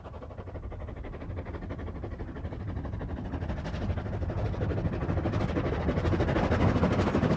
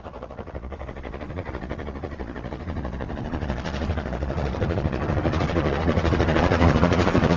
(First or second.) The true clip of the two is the first